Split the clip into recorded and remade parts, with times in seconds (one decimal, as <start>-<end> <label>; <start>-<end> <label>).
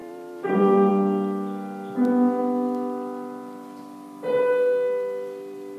0.0-0.9 remade; 0.9-5.8 recorded